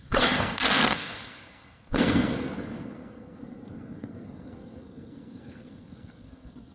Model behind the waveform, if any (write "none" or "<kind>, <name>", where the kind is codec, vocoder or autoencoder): codec, SNAC